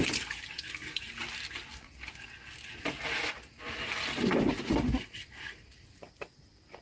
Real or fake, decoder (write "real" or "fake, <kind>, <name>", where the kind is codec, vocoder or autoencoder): real